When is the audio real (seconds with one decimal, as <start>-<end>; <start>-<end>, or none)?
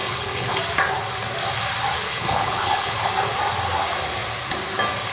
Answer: 0.6-2.1; 3.1-5.1